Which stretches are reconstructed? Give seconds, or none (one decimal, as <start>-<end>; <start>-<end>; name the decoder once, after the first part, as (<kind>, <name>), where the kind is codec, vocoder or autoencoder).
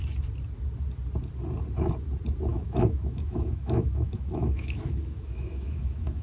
2.5-6.2 (autoencoder, DAC-VAE)